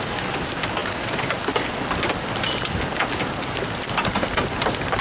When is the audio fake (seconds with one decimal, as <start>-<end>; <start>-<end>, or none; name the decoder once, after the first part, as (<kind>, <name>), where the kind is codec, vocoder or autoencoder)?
none